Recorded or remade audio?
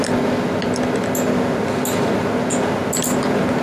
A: recorded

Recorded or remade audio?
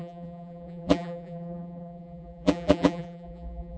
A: remade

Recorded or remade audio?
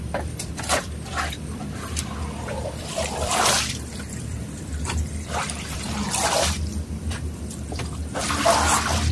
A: remade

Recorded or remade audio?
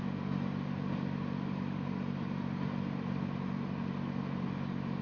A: recorded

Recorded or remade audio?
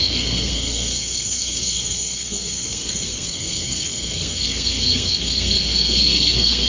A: remade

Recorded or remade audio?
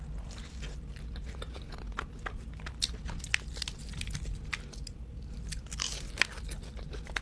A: recorded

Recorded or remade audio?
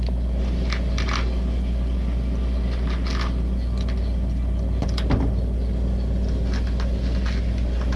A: recorded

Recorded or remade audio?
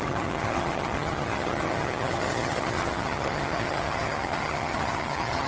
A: remade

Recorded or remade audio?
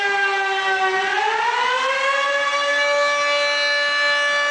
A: recorded